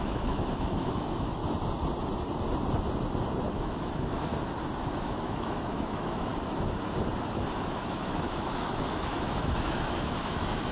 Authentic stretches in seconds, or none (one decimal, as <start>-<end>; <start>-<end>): 1.4-3.5; 4.3-4.9; 6.3-7.3